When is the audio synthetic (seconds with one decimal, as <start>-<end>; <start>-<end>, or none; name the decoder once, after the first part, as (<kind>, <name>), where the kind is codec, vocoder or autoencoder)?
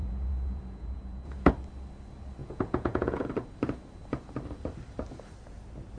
0.0-1.5 (vocoder, Vocos); 2.4-3.3